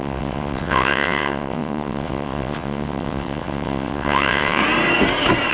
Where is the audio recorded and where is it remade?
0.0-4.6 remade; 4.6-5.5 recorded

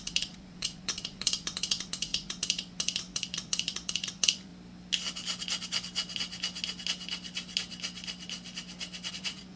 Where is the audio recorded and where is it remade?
0.0-4.5 remade; 4.5-9.1 recorded; 9.1-9.6 remade

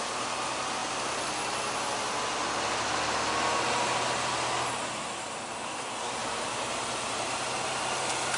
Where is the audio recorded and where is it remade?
0.0-6.2 recorded; 6.2-7.7 remade; 7.7-8.4 recorded

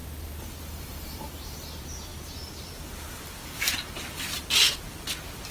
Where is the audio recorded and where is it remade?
0.0-1.3 remade; 1.3-2.1 recorded; 2.1-3.0 remade; 3.0-5.5 recorded

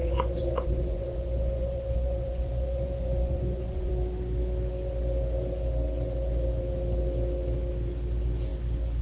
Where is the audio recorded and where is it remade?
0.0-3.9 remade; 3.9-9.0 recorded

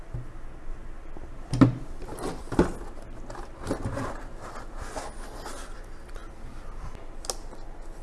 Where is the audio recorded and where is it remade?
0.0-8.0 recorded